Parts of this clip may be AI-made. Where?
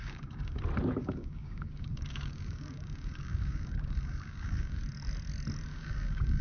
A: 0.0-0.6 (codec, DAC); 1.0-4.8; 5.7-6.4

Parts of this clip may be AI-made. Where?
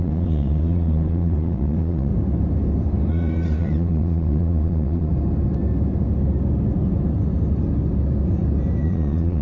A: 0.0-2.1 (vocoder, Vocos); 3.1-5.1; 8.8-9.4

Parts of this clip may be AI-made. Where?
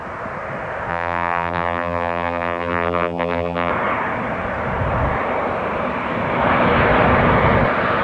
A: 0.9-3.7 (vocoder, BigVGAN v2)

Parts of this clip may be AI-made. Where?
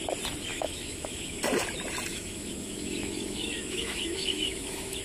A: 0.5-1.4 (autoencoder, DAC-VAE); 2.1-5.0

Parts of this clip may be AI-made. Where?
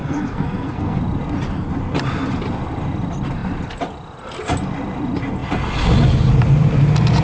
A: 0.0-1.0 (codec, SNAC)